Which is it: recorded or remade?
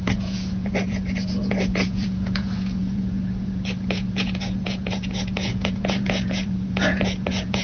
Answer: remade